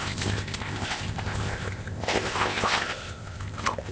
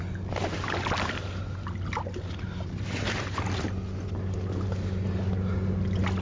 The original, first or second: second